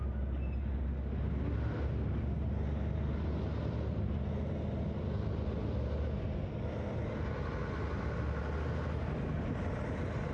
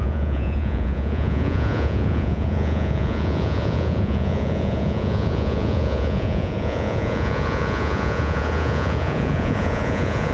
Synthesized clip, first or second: second